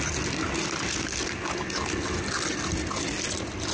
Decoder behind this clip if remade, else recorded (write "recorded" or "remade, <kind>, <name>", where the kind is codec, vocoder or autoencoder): recorded